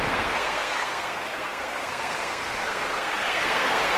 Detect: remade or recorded remade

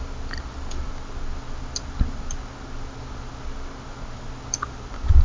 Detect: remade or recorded recorded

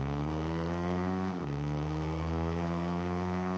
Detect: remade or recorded remade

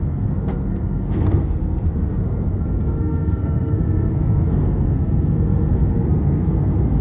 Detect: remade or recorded remade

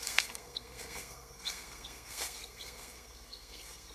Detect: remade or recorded remade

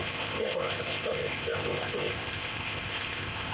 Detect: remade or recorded remade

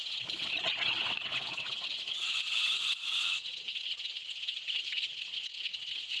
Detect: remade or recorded remade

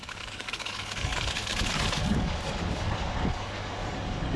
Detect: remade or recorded remade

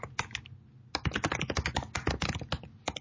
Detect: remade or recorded recorded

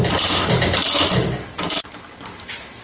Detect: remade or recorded recorded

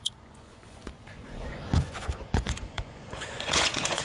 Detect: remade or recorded remade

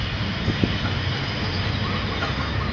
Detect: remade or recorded recorded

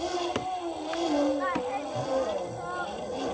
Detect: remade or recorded recorded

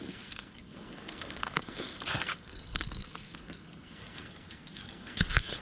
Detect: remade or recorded remade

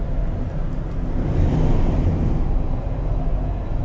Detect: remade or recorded recorded